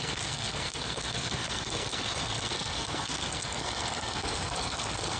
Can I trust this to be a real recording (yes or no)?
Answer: no